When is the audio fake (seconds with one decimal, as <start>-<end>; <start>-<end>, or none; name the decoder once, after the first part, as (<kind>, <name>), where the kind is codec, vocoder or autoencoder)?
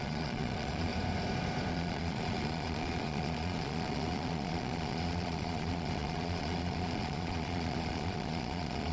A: 0.0-0.9 (vocoder, Vocos); 1.7-8.9